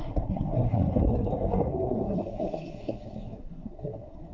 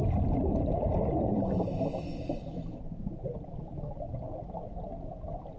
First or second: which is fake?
first